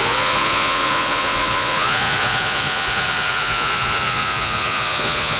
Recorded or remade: remade